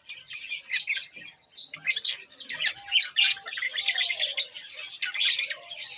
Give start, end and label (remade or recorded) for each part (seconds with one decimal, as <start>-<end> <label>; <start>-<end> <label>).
0.0-6.0 recorded